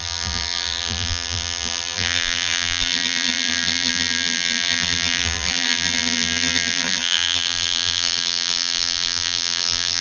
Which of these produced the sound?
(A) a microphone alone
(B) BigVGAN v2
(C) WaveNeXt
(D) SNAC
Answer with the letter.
B